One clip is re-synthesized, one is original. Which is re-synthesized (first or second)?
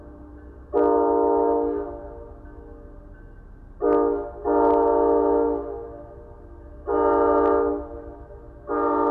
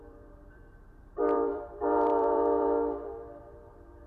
second